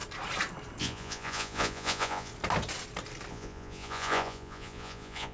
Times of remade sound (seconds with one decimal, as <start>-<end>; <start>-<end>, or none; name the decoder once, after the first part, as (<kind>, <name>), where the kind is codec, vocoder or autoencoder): 0.8-2.3 (vocoder, Vocos); 3.3-5.3